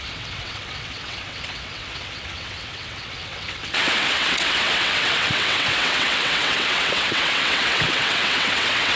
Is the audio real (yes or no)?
no